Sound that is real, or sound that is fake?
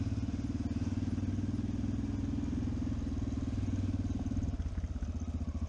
real